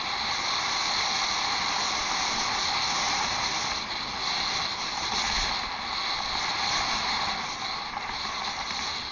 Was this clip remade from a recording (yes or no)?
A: no